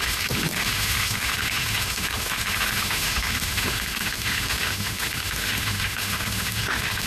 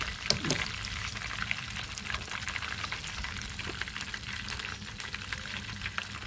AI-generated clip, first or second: first